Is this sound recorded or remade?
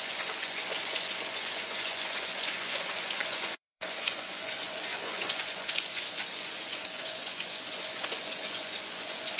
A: remade